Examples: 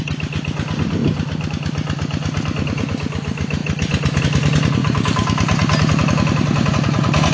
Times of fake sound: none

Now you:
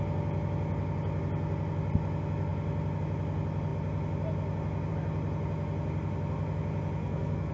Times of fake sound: 7.0-7.5 (codec, SNAC)